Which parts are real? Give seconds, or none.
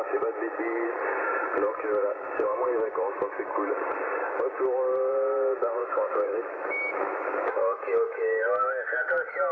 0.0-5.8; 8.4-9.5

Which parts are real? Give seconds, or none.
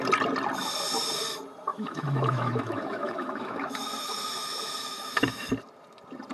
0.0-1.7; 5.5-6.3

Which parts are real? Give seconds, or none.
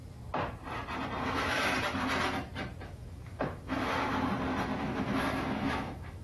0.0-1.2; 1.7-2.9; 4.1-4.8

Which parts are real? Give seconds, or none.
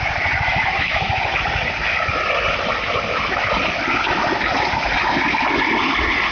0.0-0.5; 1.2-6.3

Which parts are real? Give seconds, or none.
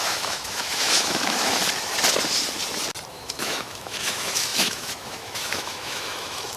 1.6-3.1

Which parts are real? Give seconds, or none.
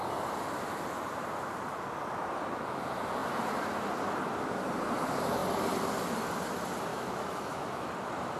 0.0-6.9; 7.9-8.4